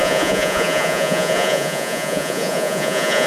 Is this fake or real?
fake